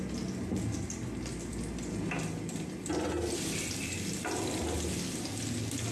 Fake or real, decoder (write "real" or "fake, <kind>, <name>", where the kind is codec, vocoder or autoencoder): real